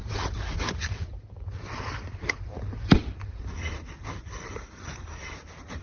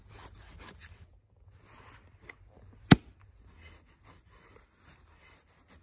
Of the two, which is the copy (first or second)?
first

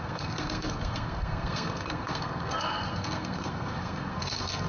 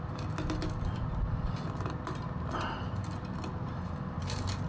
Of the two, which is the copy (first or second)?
first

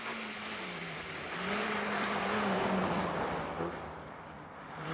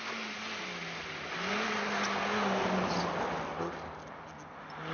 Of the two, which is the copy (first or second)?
first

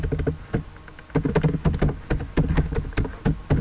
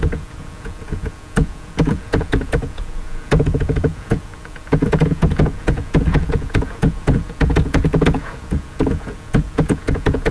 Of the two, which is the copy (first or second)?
second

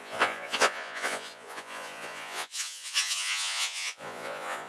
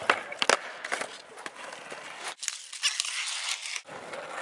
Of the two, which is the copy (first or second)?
first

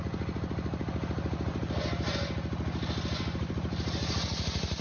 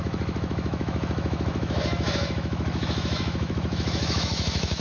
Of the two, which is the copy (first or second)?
second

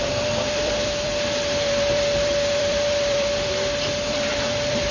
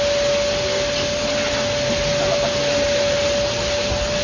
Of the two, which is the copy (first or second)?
first